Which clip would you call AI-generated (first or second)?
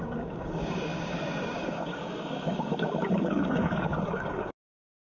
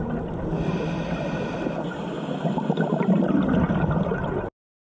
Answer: first